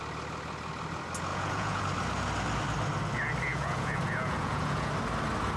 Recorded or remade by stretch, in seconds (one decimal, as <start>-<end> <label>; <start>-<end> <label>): 0.0-1.3 recorded; 1.3-1.8 remade; 1.8-3.5 recorded; 3.5-4.9 remade; 4.9-5.6 recorded